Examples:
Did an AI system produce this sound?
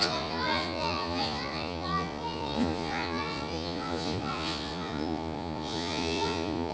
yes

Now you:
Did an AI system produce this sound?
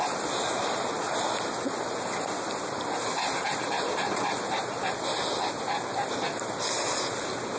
no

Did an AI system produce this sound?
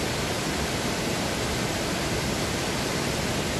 no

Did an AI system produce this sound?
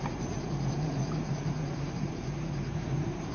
yes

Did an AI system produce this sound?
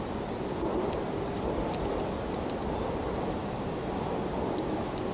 no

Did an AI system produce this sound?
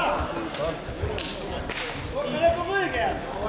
no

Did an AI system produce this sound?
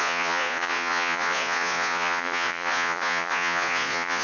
yes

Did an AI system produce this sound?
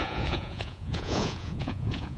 yes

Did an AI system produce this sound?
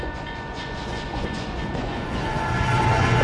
yes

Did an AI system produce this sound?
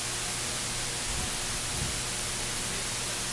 no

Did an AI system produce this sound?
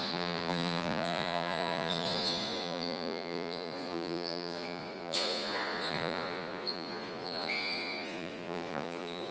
yes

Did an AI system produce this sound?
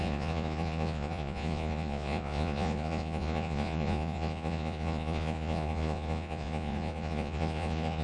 yes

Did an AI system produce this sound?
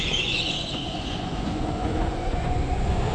yes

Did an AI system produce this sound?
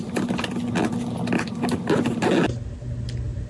no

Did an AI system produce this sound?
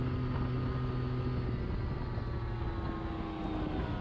no